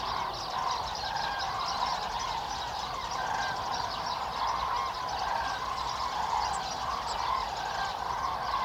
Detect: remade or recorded recorded